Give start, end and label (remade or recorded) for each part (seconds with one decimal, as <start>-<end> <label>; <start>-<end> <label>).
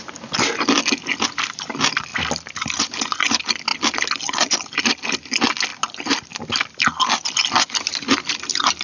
0.0-8.8 recorded